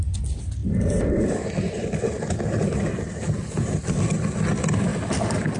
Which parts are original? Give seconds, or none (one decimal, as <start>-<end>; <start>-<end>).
0.0-0.6; 4.0-4.9